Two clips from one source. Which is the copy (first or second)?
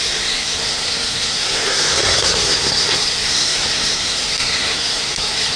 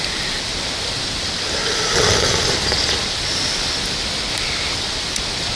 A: first